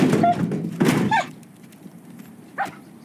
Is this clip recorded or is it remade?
remade